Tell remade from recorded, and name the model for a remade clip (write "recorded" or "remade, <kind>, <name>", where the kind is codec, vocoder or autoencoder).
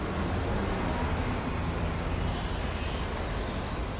recorded